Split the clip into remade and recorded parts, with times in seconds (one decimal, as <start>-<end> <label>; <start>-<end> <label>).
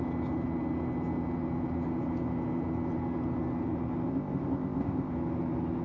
0.0-4.1 recorded; 4.1-5.1 remade; 5.1-5.8 recorded